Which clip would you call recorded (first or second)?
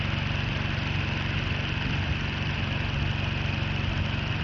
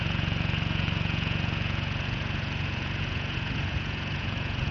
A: first